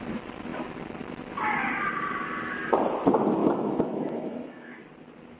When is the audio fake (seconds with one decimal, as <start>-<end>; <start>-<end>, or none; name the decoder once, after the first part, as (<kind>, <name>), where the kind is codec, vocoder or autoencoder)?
3.4-4.8 (autoencoder, DAC-VAE)

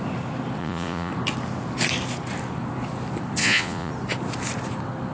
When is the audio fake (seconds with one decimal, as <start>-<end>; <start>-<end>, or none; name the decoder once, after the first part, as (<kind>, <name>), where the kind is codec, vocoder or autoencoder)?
0.6-1.1 (vocoder, Vocos); 3.4-3.9